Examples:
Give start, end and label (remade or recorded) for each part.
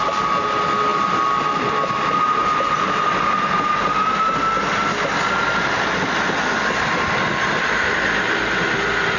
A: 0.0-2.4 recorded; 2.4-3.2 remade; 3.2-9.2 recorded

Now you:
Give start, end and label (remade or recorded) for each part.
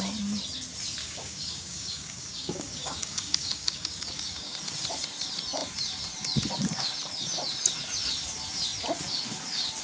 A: 0.0-1.0 recorded; 1.0-4.6 remade; 4.6-9.8 recorded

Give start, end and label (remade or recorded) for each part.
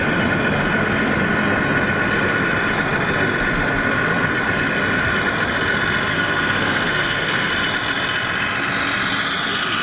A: 0.0-6.1 recorded; 6.1-7.5 remade; 7.5-9.8 recorded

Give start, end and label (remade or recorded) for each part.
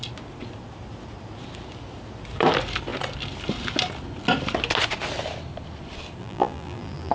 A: 0.0-6.2 recorded; 6.2-7.1 remade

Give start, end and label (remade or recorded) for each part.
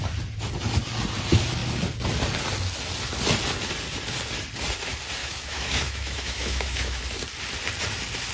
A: 0.0-5.2 recorded; 5.2-7.0 remade; 7.0-8.3 recorded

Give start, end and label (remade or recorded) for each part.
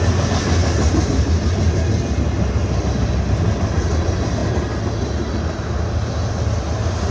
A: 0.0-7.1 recorded